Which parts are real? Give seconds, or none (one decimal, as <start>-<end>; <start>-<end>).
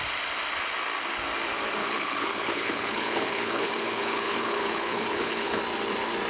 0.0-1.8; 5.6-6.3